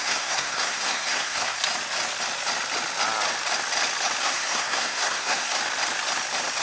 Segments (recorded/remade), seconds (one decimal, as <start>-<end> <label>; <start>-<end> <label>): 0.0-1.6 remade; 1.6-4.2 recorded; 4.2-5.6 remade; 5.6-6.6 recorded